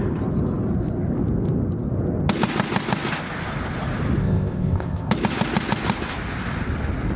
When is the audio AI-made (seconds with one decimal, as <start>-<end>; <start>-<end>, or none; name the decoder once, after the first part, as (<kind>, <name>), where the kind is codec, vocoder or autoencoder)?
4.2-5.1 (codec, ZipCodec)